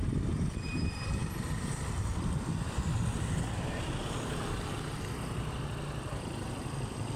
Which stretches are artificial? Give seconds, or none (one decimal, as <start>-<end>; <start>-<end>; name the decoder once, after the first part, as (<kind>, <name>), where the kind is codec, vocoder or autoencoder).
0.0-7.2 (vocoder, BigVGAN v2)